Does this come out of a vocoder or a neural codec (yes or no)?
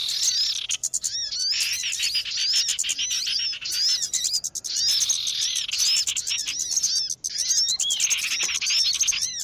no